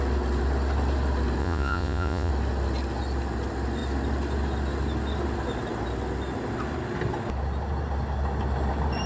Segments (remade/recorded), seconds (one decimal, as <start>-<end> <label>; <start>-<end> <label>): 0.0-1.4 recorded; 1.4-2.3 remade; 2.3-9.1 recorded